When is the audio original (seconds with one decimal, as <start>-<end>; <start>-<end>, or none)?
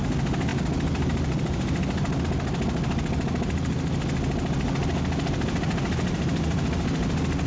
0.0-0.5; 2.2-7.5